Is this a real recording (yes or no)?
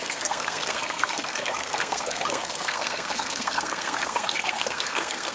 no